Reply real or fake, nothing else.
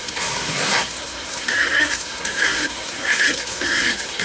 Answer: fake